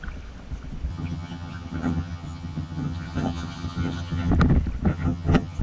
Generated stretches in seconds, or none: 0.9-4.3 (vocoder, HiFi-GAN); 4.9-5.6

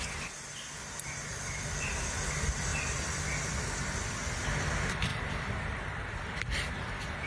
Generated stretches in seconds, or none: 2.7-3.6 (vocoder, BigVGAN v2); 5.1-6.4